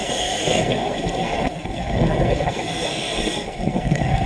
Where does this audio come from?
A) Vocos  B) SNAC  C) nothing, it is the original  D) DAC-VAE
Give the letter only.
B